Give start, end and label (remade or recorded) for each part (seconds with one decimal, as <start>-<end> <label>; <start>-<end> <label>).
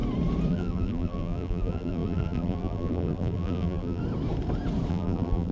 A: 0.0-0.5 recorded; 0.5-4.0 remade; 4.0-4.9 recorded; 4.9-5.5 remade